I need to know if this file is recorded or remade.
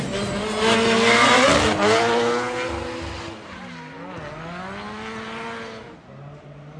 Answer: recorded